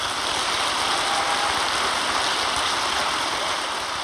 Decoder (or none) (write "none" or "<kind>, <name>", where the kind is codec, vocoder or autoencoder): none